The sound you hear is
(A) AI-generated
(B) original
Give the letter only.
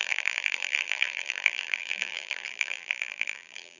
A